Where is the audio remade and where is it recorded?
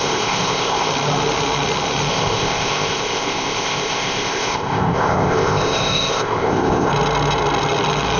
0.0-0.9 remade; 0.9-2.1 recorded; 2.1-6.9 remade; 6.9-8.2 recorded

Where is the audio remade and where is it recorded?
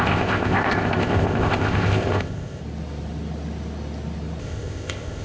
0.0-2.6 remade; 2.6-4.4 recorded; 4.4-5.2 remade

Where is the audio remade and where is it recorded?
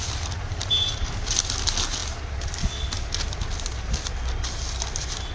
0.0-5.3 recorded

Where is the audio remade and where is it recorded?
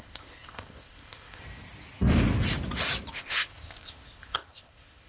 0.0-1.4 remade; 1.4-3.1 recorded; 3.1-5.1 remade